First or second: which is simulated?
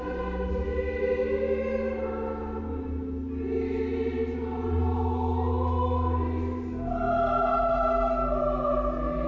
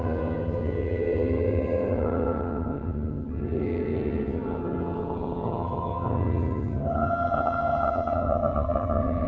second